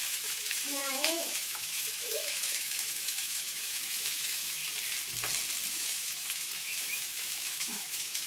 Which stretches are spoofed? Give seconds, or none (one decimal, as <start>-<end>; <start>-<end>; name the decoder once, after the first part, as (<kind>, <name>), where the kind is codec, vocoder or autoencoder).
0.0-4.6 (autoencoder, DAC-VAE); 5.7-8.3